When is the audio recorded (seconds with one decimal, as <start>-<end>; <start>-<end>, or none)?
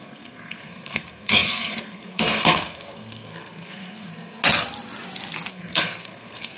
4.4-5.5